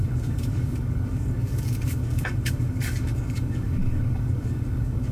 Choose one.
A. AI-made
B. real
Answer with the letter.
A